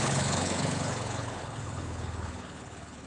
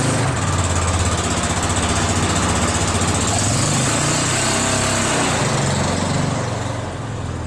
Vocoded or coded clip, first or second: first